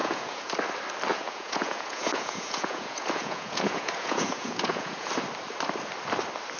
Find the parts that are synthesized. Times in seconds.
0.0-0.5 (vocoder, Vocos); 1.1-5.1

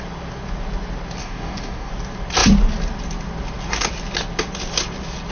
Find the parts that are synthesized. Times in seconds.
1.2-1.9 (codec, DAC)